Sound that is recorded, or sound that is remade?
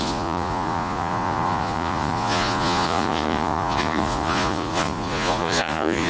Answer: remade